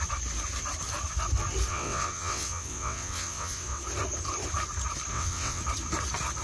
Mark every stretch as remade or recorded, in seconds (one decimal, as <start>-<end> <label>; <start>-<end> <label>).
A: 0.0-1.7 recorded; 1.7-3.8 remade; 3.8-5.1 recorded; 5.1-5.6 remade; 5.6-6.4 recorded